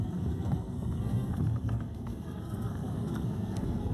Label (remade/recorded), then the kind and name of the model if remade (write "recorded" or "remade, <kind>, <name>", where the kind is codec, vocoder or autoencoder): remade, codec, SNAC